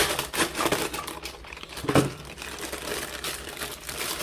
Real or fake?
fake